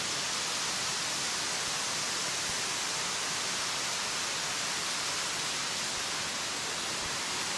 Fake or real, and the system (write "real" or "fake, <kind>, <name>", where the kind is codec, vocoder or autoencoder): real